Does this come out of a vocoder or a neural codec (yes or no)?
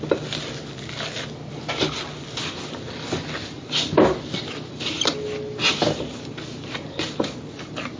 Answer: no